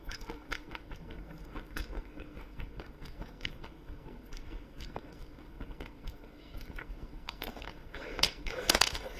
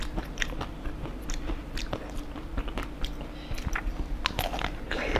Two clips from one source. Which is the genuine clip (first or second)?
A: second